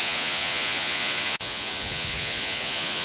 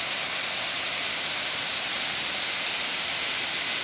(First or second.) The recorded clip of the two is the second